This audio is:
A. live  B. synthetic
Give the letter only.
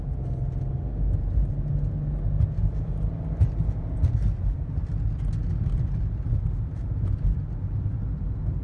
A